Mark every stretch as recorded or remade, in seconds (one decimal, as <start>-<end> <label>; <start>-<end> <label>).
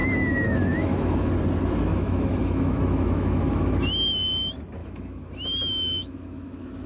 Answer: 0.0-1.3 remade; 1.3-1.9 recorded; 1.9-3.8 remade; 3.8-4.8 recorded; 4.8-6.9 remade